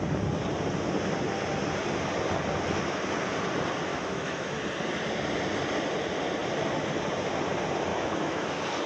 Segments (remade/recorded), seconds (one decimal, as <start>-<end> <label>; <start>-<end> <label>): 0.0-3.9 recorded; 3.9-4.6 remade; 4.6-7.9 recorded; 7.9-8.5 remade; 8.5-8.9 recorded